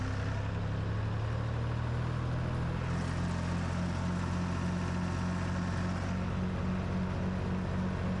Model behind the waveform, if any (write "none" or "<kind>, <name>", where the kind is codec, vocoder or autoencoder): none